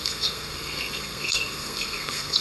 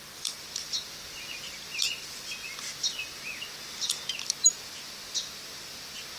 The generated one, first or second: first